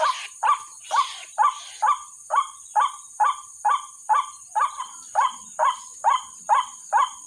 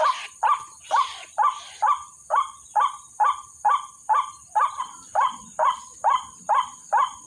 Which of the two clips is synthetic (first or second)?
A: second